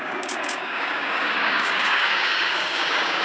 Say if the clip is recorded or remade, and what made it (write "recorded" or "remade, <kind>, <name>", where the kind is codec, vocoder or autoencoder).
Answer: remade, codec, DAC